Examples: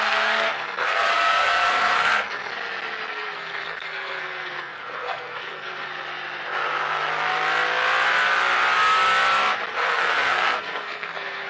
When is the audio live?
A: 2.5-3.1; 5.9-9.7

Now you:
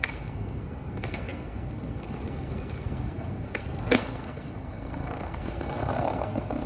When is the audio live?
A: none